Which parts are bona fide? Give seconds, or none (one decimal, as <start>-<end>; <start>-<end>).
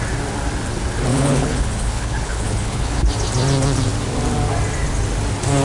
0.0-1.1; 3.0-5.6